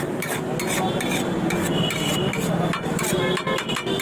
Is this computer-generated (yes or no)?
no